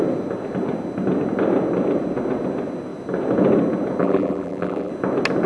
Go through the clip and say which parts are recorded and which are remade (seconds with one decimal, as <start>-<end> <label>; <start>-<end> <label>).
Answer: 0.0-4.0 recorded; 4.0-4.9 remade; 4.9-5.5 recorded